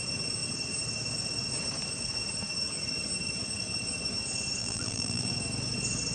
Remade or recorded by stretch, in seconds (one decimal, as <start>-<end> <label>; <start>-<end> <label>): 0.0-4.6 recorded; 4.6-5.3 remade; 5.3-6.1 recorded